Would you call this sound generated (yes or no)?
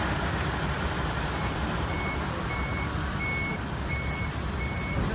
no